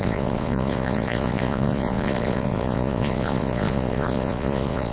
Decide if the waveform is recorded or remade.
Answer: remade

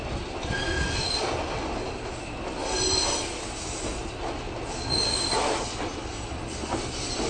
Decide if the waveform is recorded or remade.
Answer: recorded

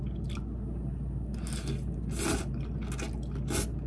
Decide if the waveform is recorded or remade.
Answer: recorded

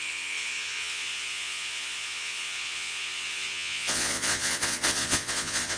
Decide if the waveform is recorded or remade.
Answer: remade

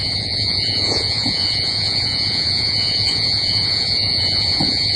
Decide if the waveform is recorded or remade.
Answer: remade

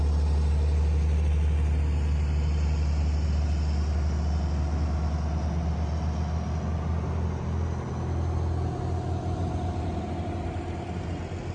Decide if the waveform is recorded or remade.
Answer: recorded